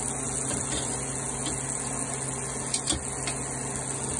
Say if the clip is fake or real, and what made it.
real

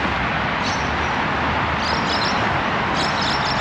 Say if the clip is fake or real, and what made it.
real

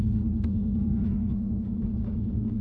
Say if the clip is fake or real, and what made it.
fake, codec, SNAC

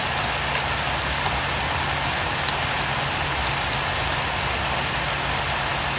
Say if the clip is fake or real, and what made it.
real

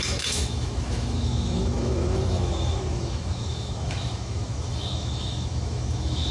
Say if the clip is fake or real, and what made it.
fake, autoencoder, DAC-VAE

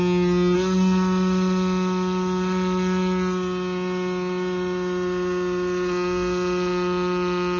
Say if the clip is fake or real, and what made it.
real